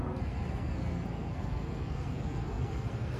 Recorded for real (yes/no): no